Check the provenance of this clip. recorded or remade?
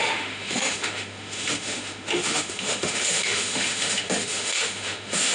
remade